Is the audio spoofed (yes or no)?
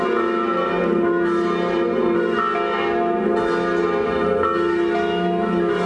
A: no